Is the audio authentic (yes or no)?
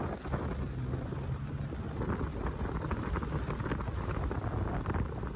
yes